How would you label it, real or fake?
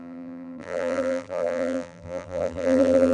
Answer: fake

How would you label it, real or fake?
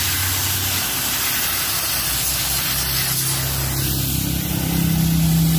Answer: real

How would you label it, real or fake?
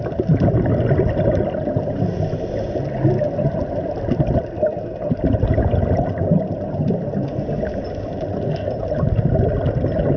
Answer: real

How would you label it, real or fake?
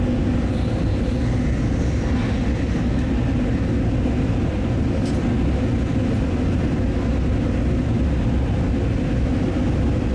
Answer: real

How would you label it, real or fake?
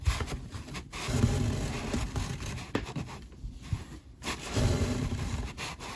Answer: fake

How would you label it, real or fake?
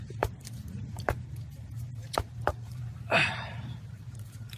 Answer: fake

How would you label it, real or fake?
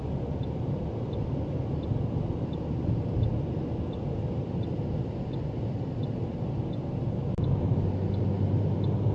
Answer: real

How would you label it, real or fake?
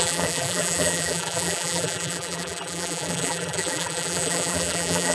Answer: fake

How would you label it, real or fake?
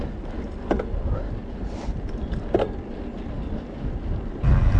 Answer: real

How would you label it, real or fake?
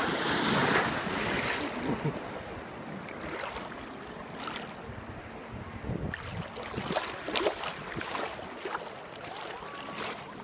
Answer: real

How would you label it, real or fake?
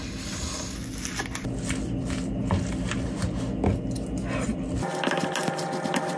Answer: real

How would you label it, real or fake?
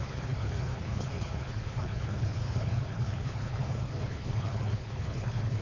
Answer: fake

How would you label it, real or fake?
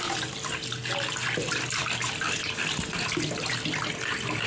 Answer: real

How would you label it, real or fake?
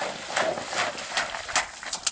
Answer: real